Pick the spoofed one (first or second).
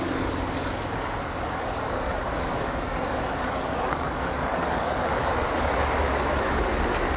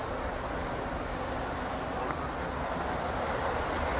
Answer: first